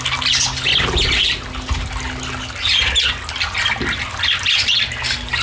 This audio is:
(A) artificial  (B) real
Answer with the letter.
B